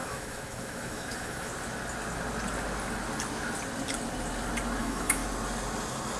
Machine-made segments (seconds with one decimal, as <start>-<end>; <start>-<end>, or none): 0.0-1.5; 4.8-5.2